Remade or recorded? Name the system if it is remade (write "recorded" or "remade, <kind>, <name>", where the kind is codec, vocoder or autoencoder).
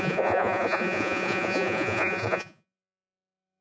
remade, vocoder, Vocos